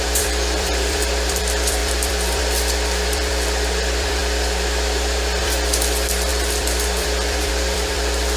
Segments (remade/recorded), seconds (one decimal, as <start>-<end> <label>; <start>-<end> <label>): 0.0-8.4 remade